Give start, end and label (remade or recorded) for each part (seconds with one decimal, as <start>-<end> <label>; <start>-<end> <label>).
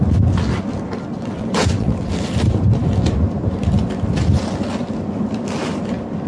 0.0-1.1 recorded; 1.1-2.1 remade; 2.1-6.3 recorded